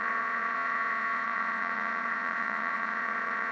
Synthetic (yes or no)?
yes